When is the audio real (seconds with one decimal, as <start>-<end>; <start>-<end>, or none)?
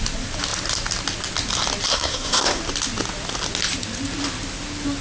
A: 0.0-1.9; 2.6-5.0